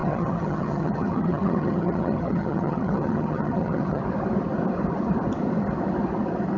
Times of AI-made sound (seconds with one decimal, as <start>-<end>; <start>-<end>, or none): 0.0-4.0